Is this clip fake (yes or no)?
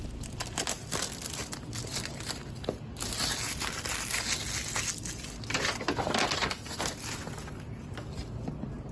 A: no